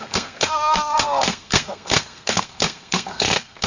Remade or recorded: remade